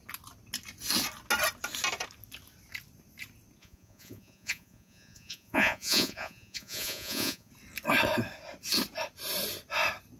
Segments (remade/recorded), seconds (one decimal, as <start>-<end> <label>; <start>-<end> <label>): 0.0-3.6 recorded; 3.6-7.5 remade; 7.5-10.2 recorded